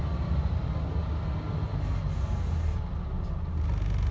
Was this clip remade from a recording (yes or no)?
no